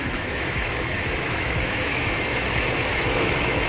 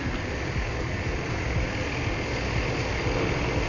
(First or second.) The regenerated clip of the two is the first